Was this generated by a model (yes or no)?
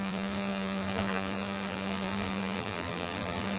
yes